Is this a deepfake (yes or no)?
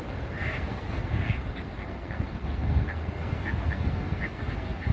yes